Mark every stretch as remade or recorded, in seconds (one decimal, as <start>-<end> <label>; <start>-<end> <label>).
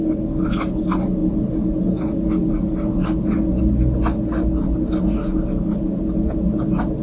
0.0-7.0 recorded